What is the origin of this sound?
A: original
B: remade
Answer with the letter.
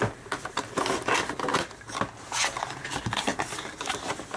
A